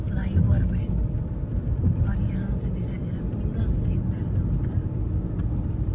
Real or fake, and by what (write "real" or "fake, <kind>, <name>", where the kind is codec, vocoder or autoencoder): real